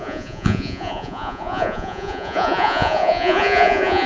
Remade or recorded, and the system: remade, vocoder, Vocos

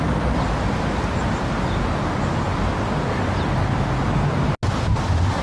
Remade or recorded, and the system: recorded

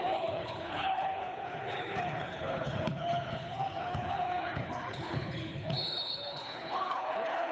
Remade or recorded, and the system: remade, codec, HILCodec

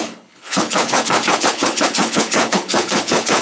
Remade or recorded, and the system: remade, codec, HILCodec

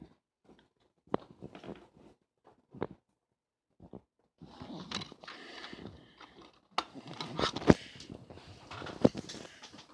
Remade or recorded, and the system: recorded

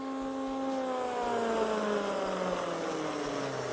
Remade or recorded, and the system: recorded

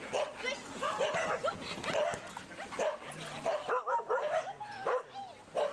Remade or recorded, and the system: recorded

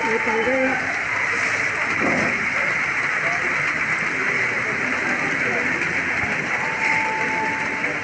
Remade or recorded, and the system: recorded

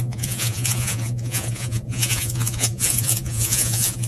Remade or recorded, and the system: remade, vocoder, Vocos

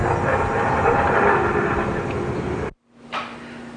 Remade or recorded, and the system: recorded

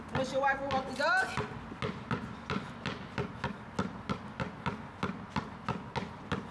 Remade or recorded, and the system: recorded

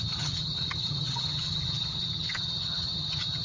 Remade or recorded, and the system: remade, vocoder, HiFi-GAN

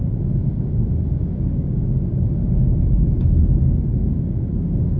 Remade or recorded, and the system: remade, codec, DAC